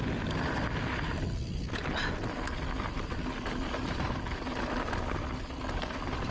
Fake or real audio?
real